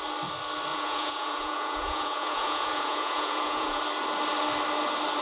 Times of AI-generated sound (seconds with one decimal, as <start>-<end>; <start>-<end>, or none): 0.7-3.8